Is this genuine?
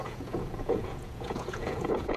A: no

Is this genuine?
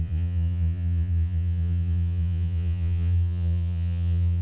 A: no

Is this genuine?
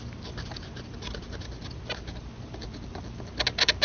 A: yes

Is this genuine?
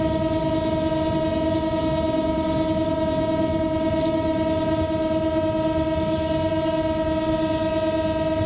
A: yes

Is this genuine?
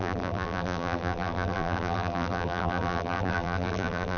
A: no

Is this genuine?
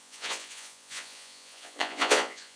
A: no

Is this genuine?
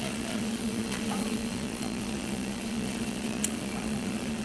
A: no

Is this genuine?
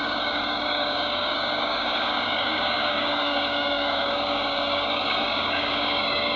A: no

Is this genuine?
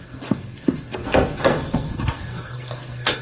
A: no